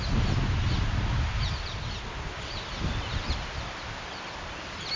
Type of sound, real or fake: real